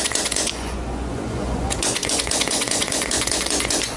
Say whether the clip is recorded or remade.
remade